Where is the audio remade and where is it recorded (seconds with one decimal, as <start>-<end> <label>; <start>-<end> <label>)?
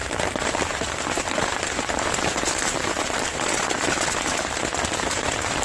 0.0-3.4 remade; 3.4-5.6 recorded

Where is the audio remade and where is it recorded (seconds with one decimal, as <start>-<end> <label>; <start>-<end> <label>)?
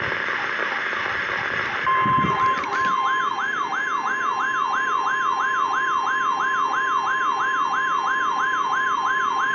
0.0-3.7 remade; 3.7-8.3 recorded; 8.3-9.5 remade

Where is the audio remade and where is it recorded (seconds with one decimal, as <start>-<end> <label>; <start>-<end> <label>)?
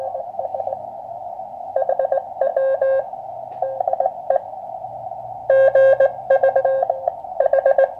0.0-2.5 remade; 2.5-4.5 recorded; 4.5-5.4 remade; 5.4-6.6 recorded; 6.6-8.0 remade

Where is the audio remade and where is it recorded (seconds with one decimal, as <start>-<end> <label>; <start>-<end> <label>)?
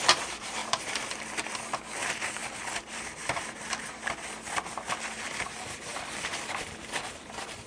0.0-0.6 recorded; 0.6-1.2 remade; 1.2-2.4 recorded; 2.4-3.9 remade; 3.9-5.9 recorded; 5.9-7.7 remade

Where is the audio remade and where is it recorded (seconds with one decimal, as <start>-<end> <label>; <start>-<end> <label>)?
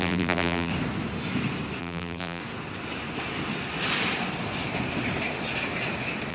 0.0-0.7 remade; 0.7-1.8 recorded; 1.8-2.4 remade; 2.4-6.3 recorded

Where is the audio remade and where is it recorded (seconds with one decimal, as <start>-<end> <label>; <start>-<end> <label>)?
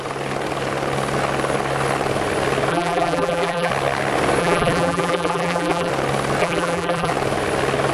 0.0-2.7 recorded; 2.7-3.7 remade; 3.7-4.4 recorded; 4.4-5.9 remade; 5.9-6.4 recorded; 6.4-7.1 remade; 7.1-7.9 recorded